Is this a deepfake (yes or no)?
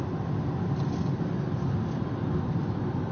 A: no